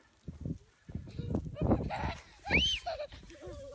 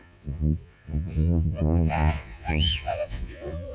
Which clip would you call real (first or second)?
first